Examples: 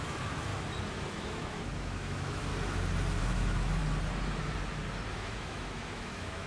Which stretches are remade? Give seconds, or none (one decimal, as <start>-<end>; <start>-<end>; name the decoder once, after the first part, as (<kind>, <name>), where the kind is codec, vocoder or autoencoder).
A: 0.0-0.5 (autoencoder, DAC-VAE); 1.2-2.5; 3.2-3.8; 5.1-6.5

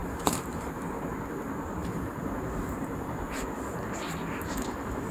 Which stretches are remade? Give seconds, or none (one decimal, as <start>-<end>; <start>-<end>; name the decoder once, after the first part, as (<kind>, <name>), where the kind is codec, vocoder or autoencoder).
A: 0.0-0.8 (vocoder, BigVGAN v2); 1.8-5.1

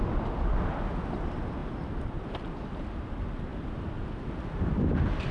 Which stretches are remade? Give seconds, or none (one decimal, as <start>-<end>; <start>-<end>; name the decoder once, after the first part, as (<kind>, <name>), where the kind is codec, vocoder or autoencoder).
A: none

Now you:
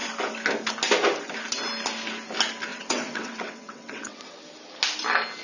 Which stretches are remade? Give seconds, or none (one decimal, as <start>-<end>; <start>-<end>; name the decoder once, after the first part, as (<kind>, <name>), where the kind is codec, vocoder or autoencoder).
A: 2.7-4.2 (vocoder, WaveNeXt)